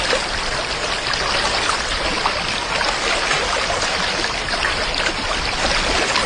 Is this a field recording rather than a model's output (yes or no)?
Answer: yes